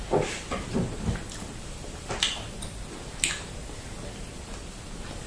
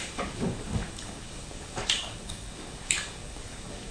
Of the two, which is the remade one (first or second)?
second